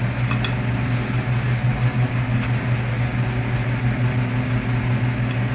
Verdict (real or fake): real